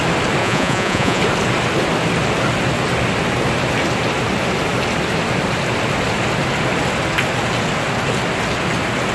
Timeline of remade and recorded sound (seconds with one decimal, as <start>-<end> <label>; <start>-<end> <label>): 0.0-0.4 recorded; 0.4-1.2 remade; 1.2-9.1 recorded